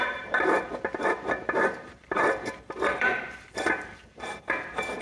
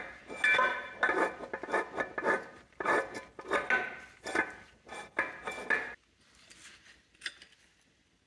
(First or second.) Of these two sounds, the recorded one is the second